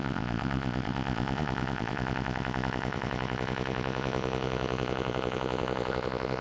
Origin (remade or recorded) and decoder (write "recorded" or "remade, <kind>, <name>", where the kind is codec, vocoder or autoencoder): remade, vocoder, Vocos